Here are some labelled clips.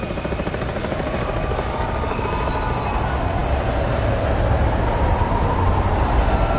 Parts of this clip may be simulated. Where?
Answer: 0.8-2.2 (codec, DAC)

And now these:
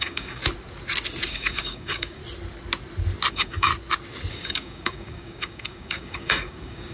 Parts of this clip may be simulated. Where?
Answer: 0.0-0.4 (codec, DAC); 1.3-2.2; 3.3-3.7; 4.3-6.9

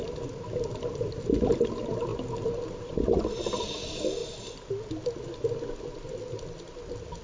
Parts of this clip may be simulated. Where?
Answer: none

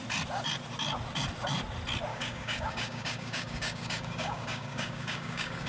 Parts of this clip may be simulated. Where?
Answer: 2.1-5.7 (codec, DAC)

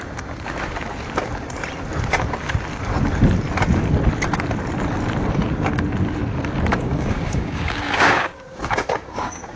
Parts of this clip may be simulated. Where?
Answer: 6.7-9.6 (codec, DAC)

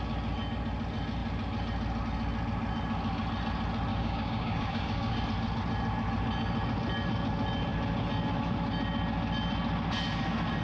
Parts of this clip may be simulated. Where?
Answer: 3.9-5.2 (codec, DAC)

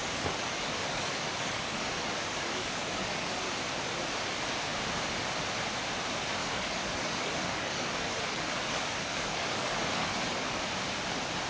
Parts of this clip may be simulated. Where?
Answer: 0.0-3.3 (codec, DAC); 6.4-10.6

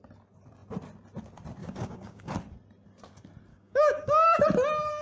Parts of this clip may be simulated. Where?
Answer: 1.6-2.3 (codec, DAC); 3.5-4.4